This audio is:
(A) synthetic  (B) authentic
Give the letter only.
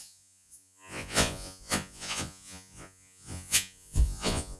A